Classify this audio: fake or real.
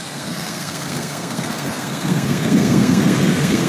fake